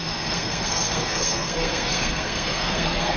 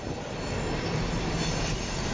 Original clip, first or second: second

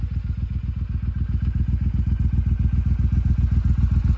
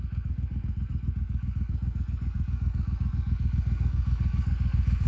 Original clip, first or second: first